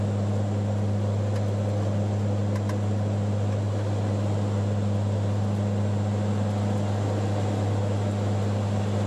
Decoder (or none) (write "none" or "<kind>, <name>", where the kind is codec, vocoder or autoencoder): none